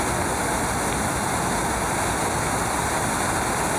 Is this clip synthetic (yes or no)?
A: no